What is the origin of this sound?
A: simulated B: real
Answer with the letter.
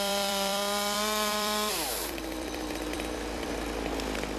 A